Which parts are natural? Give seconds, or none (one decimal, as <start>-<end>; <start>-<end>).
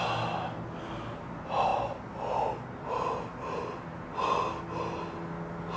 0.0-5.8